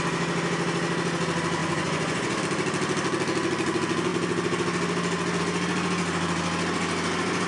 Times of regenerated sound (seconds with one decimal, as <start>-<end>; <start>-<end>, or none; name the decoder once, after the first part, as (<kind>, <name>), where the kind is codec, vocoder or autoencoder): 1.6-2.4 (vocoder, Vocos)